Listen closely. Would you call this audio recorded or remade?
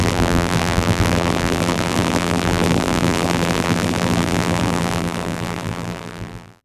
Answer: remade